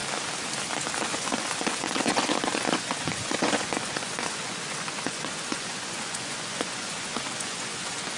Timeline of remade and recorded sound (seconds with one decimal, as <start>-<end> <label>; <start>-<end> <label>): 0.0-1.0 recorded; 1.0-8.2 remade